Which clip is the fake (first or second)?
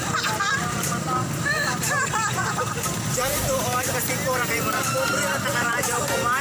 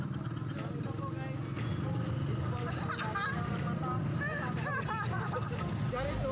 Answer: first